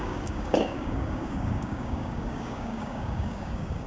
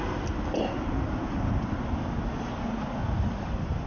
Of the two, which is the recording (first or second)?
second